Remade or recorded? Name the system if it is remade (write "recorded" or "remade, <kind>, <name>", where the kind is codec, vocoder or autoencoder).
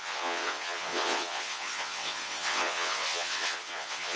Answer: remade, vocoder, WaveNeXt